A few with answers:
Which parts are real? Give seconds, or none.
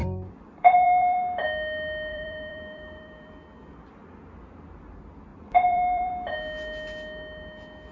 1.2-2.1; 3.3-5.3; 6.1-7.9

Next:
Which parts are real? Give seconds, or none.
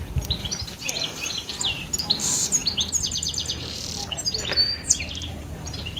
2.6-3.5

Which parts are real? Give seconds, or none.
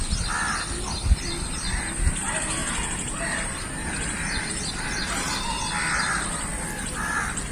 0.0-2.6; 5.7-7.5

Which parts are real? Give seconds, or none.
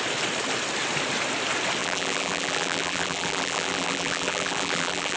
0.0-1.8